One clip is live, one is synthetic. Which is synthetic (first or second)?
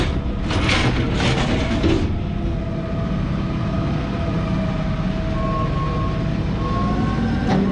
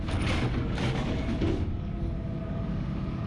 second